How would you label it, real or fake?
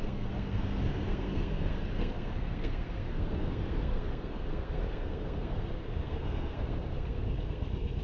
fake